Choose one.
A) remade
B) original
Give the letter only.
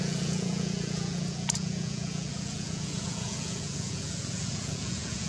A